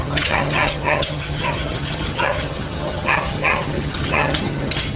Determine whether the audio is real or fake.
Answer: fake